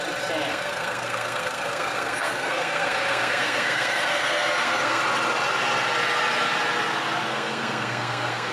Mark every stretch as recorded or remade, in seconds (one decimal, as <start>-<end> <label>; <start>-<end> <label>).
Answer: 0.0-0.5 recorded; 0.5-5.0 remade; 5.0-7.3 recorded; 7.3-8.5 remade